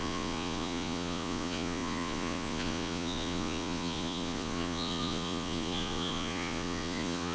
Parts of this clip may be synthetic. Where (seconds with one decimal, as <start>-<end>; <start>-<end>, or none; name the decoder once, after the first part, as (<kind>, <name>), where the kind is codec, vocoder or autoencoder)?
0.0-7.3 (vocoder, Vocos)